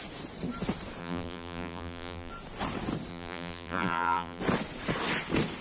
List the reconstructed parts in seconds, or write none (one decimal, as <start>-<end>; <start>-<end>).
1.0-2.3; 3.1-4.4